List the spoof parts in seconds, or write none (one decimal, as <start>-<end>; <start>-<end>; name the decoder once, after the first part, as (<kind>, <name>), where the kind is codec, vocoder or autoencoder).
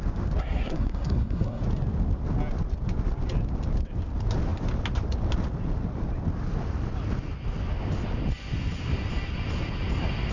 0.4-1.6 (codec, SNAC)